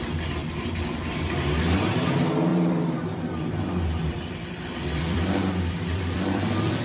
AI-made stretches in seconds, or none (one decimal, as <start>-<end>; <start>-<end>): 0.4-1.1; 2.5-6.8